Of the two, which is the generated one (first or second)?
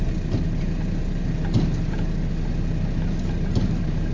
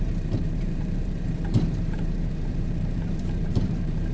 second